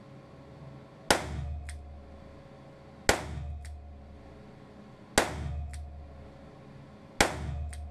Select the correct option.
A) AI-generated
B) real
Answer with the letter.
B